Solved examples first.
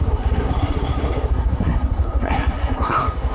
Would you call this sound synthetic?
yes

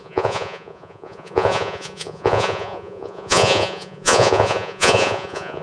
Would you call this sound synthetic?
yes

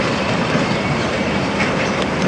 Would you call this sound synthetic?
yes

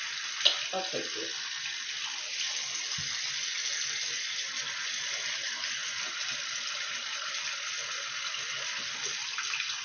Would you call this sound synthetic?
no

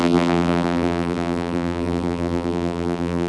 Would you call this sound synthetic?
yes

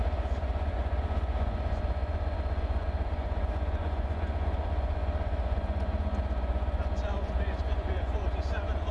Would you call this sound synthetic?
yes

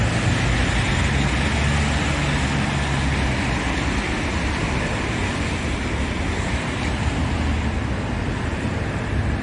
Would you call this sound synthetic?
no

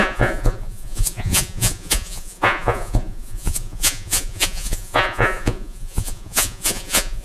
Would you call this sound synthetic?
yes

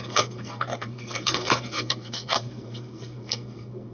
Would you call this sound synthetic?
yes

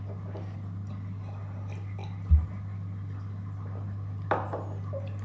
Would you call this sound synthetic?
no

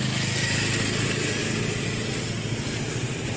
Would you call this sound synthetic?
no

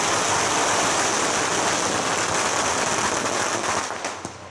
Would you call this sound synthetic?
no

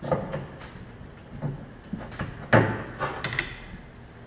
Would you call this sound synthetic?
no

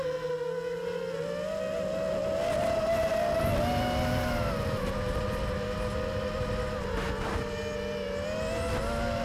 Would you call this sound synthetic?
no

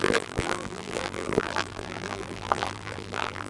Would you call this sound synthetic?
yes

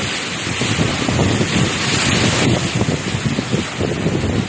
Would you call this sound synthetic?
no